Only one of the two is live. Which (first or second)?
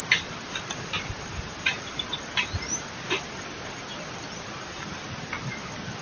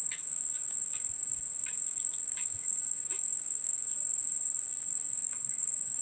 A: first